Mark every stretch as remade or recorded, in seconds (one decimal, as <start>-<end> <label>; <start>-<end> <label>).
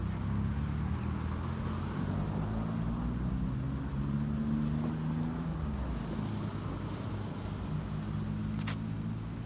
0.0-9.5 recorded